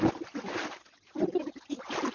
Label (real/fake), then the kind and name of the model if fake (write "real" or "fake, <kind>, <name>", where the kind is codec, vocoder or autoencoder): real